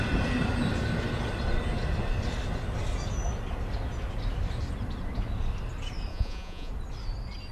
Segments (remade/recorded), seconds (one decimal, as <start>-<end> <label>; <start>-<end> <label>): 0.0-6.1 recorded; 6.1-6.7 remade; 6.7-7.5 recorded